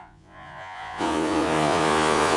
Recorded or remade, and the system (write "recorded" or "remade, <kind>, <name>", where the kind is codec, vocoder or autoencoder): remade, vocoder, Vocos